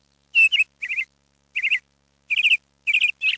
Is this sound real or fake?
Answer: real